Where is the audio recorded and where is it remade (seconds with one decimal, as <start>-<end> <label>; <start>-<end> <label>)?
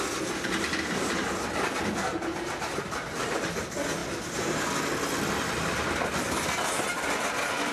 0.0-7.7 recorded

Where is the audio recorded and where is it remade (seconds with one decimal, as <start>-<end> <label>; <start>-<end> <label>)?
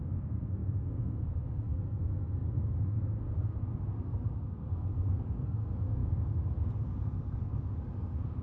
0.0-8.4 remade